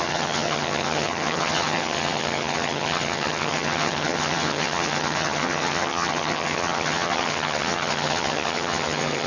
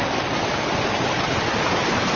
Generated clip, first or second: first